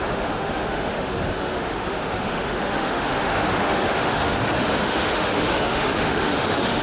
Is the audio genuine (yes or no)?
no